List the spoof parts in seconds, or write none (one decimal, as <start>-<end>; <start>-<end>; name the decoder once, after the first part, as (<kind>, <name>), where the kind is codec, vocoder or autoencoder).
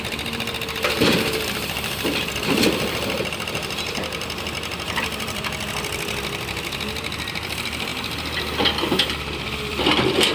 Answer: 0.0-7.9 (vocoder, BigVGAN v2); 8.8-10.3